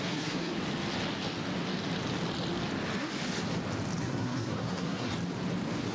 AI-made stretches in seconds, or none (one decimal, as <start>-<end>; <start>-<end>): 0.0-0.5; 4.0-5.1